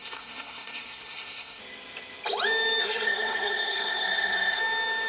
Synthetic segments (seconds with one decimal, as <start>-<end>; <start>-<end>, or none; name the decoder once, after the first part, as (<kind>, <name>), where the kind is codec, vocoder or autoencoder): 0.0-1.6 (codec, SNAC); 2.8-4.6